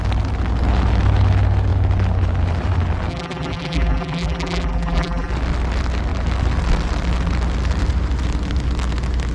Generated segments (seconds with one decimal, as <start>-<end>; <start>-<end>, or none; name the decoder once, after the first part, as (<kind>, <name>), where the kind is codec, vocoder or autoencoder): 3.1-5.3 (vocoder, BigVGAN v2)